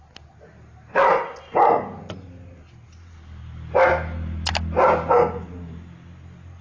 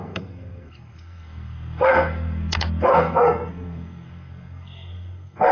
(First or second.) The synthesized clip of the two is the second